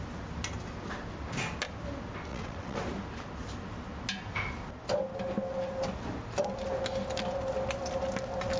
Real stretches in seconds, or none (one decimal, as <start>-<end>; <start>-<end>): 0.0-2.3; 2.8-8.6

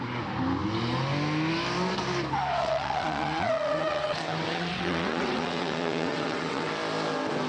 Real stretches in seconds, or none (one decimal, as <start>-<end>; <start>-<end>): 0.0-2.6; 6.7-7.5

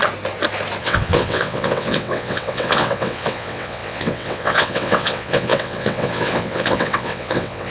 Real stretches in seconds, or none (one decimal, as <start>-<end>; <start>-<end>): 0.0-0.8

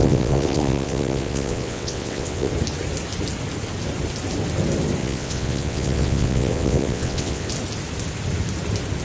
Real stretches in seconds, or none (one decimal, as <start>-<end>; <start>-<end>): 2.5-5.0; 7.5-9.0

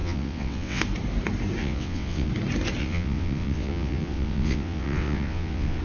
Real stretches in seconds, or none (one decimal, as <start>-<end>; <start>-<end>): 0.8-1.6; 2.3-2.8

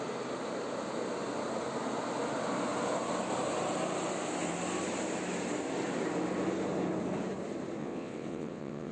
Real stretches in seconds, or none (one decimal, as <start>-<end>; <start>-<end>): 0.0-7.8

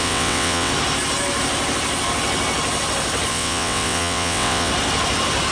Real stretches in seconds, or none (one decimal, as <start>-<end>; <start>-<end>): 0.7-3.3; 4.7-5.5

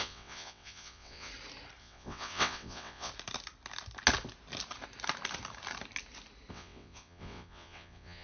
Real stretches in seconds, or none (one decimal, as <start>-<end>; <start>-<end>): 1.3-1.8; 3.1-6.5